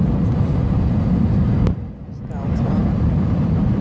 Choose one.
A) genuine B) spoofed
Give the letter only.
B